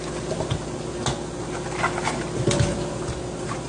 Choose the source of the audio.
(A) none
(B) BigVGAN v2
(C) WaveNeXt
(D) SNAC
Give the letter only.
A